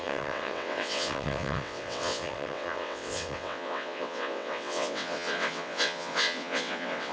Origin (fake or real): fake